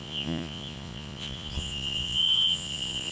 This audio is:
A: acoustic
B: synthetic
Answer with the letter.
B